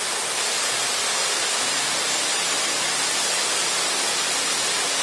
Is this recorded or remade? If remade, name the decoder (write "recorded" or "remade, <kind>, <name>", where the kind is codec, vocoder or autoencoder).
recorded